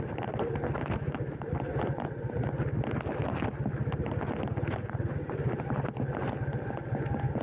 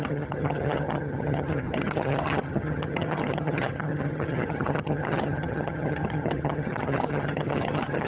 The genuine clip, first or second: first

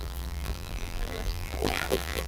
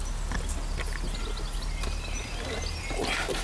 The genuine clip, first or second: second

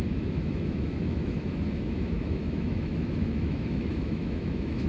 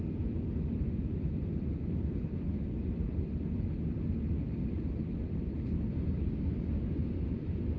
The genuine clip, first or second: second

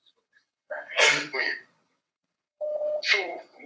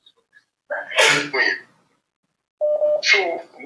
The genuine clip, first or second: second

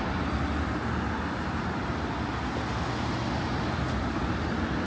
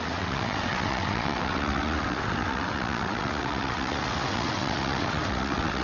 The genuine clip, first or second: first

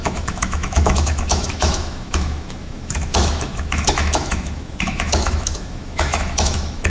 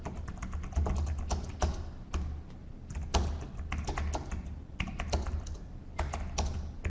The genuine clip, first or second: second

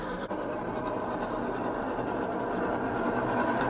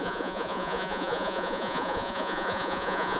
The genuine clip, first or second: first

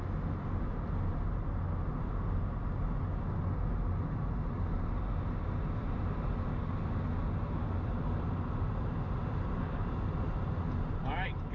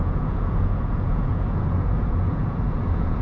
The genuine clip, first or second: first